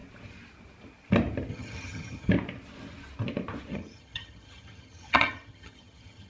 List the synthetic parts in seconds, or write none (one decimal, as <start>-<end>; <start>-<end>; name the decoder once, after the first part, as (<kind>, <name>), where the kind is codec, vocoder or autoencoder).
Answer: 1.5-2.3 (vocoder, HiFi-GAN); 3.7-6.3